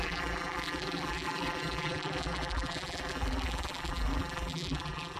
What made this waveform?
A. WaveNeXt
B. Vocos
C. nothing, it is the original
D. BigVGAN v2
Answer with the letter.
D